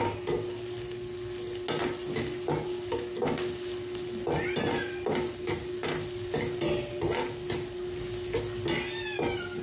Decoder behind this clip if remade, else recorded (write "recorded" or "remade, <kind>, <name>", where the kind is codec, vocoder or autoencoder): recorded